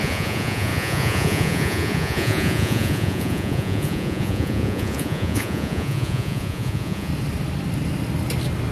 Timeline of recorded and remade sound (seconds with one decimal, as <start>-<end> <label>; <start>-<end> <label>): 0.0-7.1 remade; 7.1-8.7 recorded